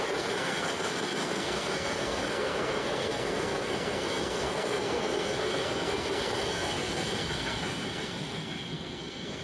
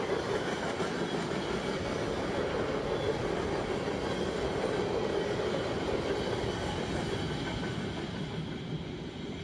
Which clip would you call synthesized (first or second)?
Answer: first